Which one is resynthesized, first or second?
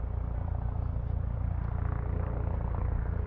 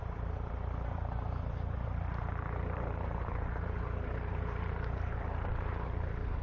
second